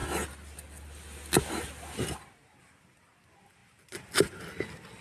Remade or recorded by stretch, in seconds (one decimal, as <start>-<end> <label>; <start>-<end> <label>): 0.0-5.0 recorded

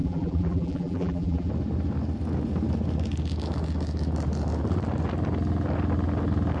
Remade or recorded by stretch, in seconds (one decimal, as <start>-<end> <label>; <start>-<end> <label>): 0.0-1.5 remade; 1.5-6.6 recorded

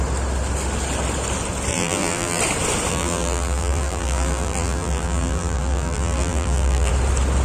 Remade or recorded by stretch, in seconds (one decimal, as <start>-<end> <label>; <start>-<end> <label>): 0.0-1.7 recorded; 1.7-2.4 remade; 2.4-2.9 recorded; 2.9-6.9 remade; 6.9-7.4 recorded

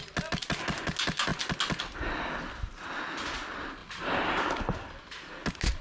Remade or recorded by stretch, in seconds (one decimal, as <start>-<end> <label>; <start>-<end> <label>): 0.0-5.8 recorded